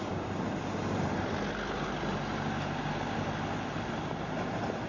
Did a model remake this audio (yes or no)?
no